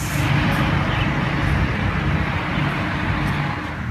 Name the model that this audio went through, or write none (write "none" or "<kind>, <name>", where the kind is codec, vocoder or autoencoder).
none